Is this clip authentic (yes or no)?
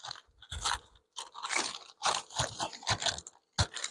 yes